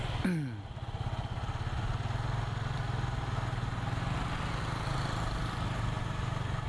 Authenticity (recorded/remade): recorded